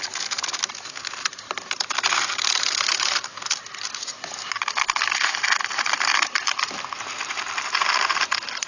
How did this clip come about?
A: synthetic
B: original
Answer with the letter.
B